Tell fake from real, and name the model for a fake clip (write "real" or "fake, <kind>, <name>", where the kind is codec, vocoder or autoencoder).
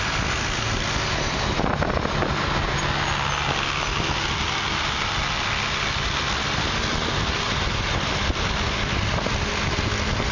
real